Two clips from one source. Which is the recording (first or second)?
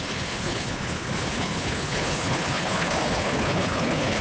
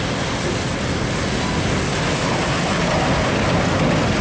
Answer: second